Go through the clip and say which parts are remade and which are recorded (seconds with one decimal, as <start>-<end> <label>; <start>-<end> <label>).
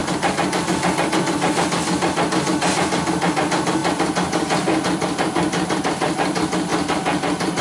0.0-7.6 recorded